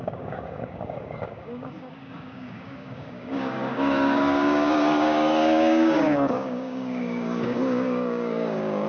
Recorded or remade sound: remade